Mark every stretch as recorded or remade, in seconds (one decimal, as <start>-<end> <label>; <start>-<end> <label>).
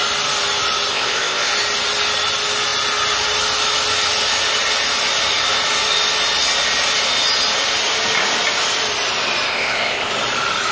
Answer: 0.0-0.9 recorded; 0.9-1.5 remade; 1.5-9.5 recorded; 9.5-10.1 remade; 10.1-10.7 recorded